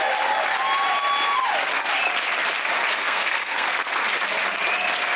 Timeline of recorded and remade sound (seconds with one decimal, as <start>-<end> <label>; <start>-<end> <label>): 0.0-3.0 recorded; 3.0-4.0 remade; 4.0-5.2 recorded